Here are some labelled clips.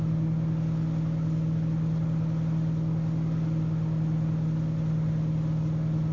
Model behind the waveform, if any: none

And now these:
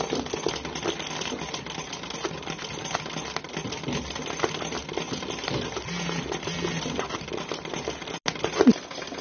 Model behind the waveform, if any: none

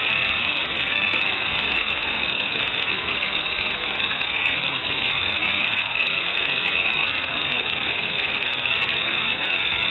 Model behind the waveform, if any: codec, SNAC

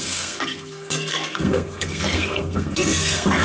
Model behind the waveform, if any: codec, SNAC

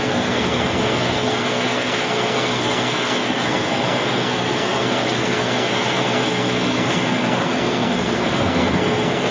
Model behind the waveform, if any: codec, SNAC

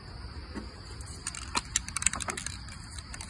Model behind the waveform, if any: none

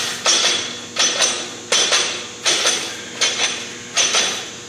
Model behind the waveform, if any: none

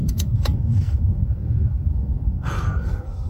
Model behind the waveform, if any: codec, SNAC